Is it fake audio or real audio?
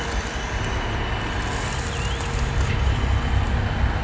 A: real